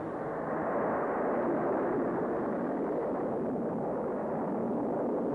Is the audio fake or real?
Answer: real